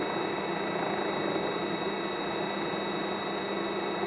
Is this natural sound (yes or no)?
yes